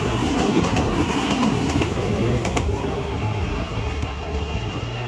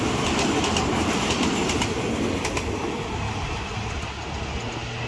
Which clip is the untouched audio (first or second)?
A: second